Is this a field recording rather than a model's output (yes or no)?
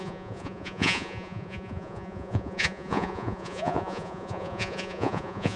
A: no